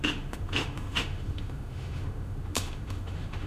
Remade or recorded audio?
remade